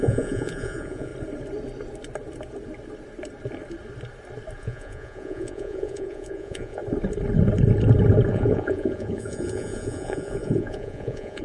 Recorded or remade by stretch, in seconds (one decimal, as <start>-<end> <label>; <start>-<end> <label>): 0.0-1.1 remade; 1.1-4.6 recorded; 4.6-6.8 remade; 6.8-8.3 recorded; 8.3-11.4 remade